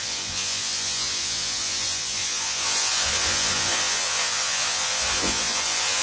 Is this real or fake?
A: fake